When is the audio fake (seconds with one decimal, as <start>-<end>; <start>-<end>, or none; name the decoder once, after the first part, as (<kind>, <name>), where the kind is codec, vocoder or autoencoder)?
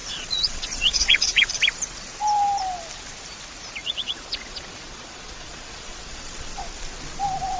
0.0-1.5 (vocoder, Vocos); 3.8-6.5